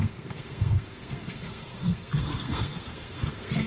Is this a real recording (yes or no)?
no